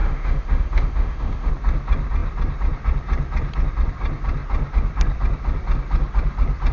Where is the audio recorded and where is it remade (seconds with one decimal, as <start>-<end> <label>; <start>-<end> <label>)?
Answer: 0.0-1.5 remade; 1.5-6.7 recorded